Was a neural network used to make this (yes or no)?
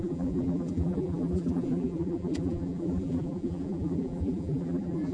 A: yes